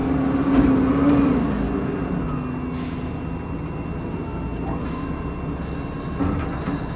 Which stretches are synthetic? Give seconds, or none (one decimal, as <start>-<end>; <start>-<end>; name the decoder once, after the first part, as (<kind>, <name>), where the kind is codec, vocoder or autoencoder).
none